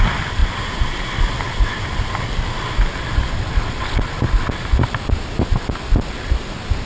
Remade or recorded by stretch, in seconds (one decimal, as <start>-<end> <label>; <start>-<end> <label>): 0.0-6.9 recorded